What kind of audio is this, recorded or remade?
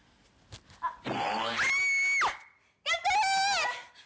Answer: recorded